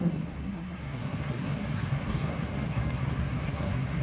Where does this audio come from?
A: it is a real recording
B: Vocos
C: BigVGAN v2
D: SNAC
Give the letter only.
D